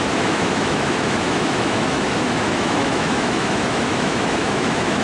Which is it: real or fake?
fake